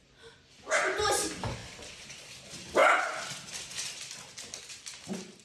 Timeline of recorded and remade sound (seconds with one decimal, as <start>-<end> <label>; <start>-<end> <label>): 0.0-1.6 recorded; 1.6-2.3 remade; 2.3-5.4 recorded